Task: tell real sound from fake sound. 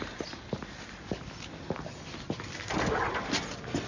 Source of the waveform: real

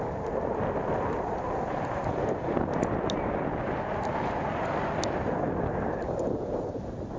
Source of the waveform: real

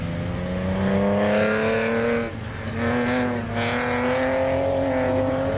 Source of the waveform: real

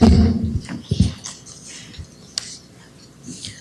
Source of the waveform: real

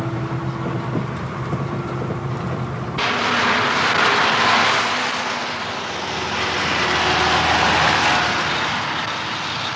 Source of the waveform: real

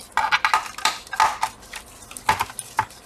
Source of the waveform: real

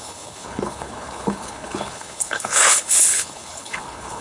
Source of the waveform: fake